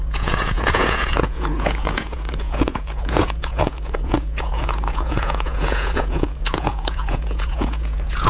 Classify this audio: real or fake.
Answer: fake